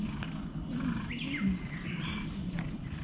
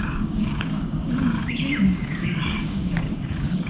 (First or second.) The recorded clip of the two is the first